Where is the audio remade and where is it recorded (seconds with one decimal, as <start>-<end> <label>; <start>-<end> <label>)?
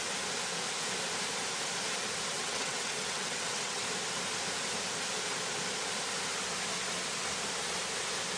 0.0-2.3 recorded; 2.3-3.8 remade; 3.8-8.4 recorded